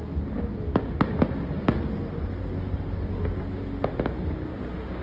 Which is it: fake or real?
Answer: real